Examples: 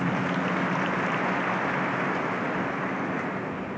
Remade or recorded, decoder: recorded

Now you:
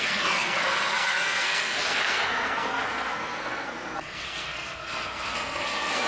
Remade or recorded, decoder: remade, codec, SNAC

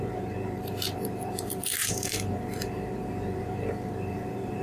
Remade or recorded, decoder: remade, vocoder, BigVGAN v2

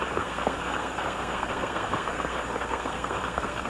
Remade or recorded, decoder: remade, codec, SNAC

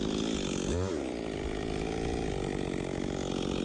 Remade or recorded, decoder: recorded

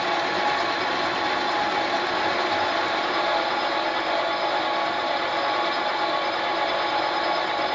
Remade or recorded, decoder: recorded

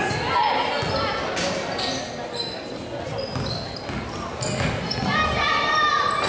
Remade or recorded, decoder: recorded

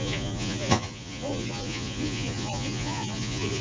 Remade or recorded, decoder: remade, vocoder, Vocos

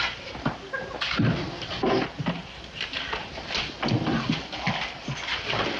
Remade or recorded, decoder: recorded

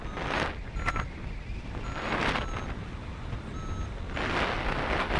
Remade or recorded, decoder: recorded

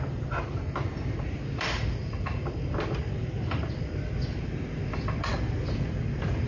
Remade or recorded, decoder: recorded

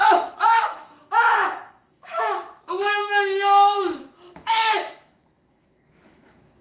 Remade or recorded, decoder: remade, autoencoder, DAC-VAE